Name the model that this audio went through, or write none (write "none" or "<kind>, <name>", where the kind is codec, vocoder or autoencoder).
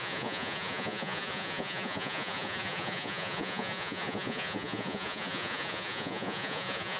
vocoder, Vocos